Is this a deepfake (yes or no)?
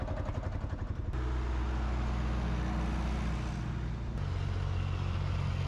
no